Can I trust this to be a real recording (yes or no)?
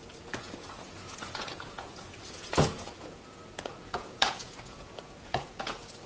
no